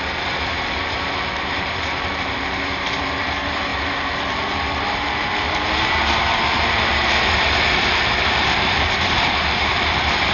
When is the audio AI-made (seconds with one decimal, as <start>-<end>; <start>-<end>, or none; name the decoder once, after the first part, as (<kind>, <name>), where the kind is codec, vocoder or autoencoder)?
0.0-10.3 (vocoder, BigVGAN v2)